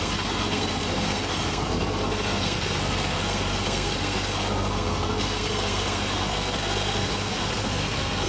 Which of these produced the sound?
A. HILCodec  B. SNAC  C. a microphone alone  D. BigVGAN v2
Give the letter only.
B